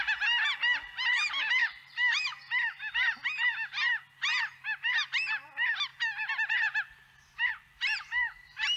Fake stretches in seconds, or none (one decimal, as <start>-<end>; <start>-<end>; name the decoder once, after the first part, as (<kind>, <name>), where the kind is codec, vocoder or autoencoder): 0.0-2.3 (vocoder, BigVGAN v2); 2.9-5.9; 7.5-8.8